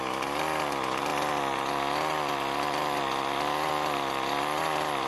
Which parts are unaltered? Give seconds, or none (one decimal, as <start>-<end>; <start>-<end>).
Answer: 0.0-5.1